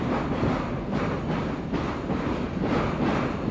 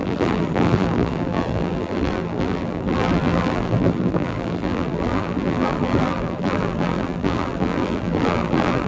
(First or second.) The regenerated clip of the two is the second